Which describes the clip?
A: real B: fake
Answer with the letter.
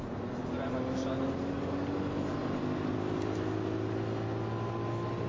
A